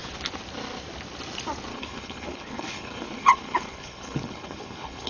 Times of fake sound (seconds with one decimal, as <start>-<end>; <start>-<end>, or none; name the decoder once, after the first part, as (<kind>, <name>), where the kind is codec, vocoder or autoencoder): 1.7-5.1 (codec, HILCodec)